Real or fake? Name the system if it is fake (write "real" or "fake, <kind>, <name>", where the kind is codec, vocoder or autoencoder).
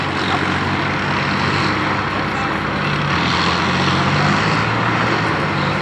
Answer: real